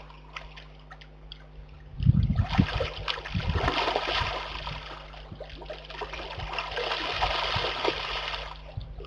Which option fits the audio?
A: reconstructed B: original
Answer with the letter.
B